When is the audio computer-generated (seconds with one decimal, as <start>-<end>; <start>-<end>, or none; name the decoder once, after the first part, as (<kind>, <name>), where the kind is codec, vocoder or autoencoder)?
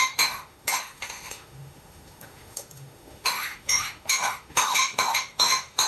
0.0-5.9 (autoencoder, DAC-VAE)